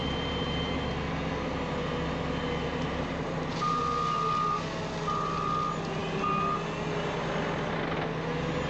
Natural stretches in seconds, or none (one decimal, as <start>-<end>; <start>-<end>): 1.0-2.7; 3.8-8.7